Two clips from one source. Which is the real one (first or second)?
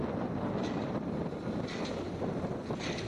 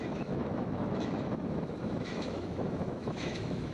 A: first